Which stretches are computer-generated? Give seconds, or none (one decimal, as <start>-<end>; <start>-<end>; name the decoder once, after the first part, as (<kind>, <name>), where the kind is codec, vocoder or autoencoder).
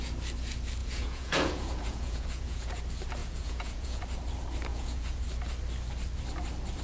0.8-2.8 (vocoder, Vocos); 3.2-4.0; 4.7-5.2